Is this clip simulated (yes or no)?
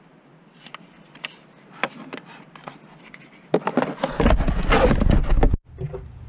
no